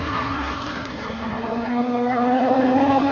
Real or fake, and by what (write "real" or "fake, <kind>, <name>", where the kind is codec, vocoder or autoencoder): fake, codec, SNAC